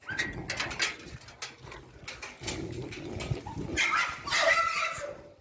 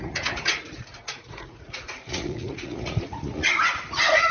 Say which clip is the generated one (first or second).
second